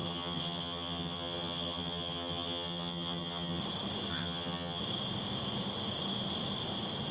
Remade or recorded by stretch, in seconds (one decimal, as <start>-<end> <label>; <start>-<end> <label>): 0.0-3.6 remade; 3.6-4.1 recorded; 4.1-4.8 remade; 4.8-7.1 recorded